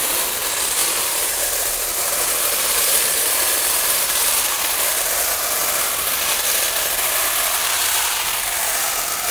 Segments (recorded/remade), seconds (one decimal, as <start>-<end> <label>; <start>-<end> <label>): 0.0-5.6 remade; 5.6-6.3 recorded; 6.3-9.3 remade